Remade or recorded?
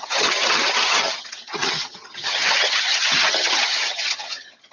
remade